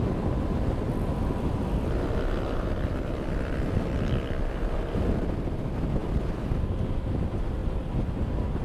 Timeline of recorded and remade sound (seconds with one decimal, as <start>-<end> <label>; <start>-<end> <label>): 0.0-8.6 recorded